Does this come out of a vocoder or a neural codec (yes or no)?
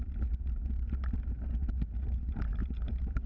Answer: no